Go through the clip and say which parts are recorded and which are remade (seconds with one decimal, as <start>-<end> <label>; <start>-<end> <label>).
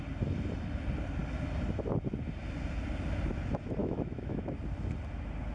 0.0-3.8 recorded; 3.8-4.5 remade; 4.5-5.5 recorded